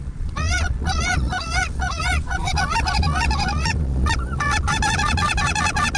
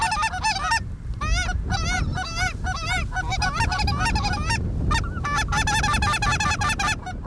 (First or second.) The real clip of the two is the second